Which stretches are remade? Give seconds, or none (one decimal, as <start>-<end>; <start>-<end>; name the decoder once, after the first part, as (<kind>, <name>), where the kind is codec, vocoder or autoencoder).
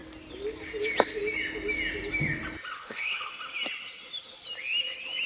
2.8-3.3 (codec, HILCodec)